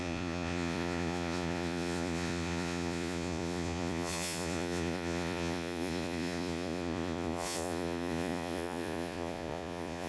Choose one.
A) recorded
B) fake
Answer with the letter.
B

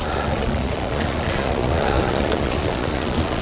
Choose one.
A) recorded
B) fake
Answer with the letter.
B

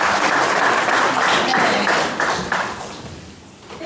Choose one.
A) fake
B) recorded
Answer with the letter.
B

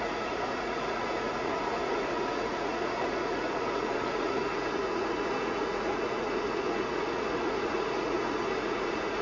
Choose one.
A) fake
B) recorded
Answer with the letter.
A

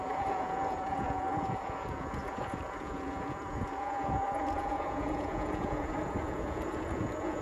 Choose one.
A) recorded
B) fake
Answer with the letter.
B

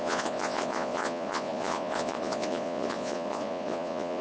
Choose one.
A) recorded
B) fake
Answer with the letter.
B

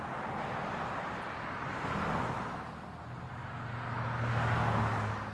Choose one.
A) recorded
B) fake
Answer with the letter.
A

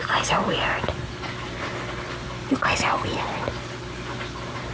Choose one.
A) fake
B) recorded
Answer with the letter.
B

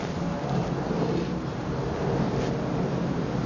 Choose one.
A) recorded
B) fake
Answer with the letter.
A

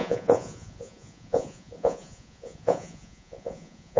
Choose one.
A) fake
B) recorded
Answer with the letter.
A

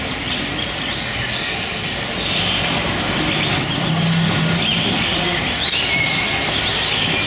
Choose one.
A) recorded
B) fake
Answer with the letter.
A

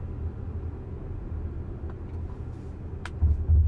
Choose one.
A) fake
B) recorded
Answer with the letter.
B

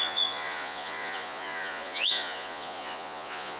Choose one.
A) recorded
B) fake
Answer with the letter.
B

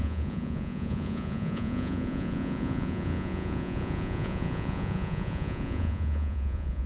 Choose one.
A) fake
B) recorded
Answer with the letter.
A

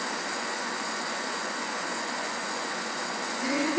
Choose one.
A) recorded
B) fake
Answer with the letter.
B